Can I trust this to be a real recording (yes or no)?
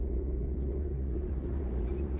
no